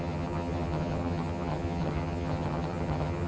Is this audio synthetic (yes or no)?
yes